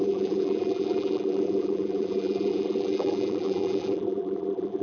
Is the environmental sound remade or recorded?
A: remade